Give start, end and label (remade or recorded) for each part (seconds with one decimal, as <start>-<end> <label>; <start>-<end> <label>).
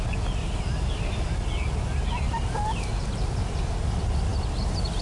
0.0-5.0 recorded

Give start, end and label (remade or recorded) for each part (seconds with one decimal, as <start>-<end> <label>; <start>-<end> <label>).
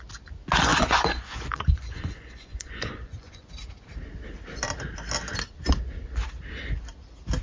0.0-0.7 recorded; 0.7-3.5 remade; 3.5-7.4 recorded